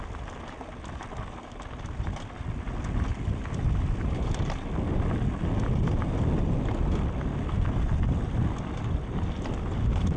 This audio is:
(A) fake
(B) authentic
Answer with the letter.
B